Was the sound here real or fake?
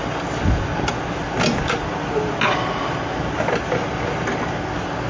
real